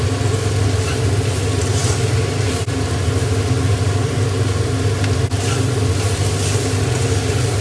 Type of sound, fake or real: real